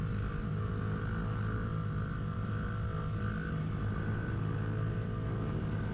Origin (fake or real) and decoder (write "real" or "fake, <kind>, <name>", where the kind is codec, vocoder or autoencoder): real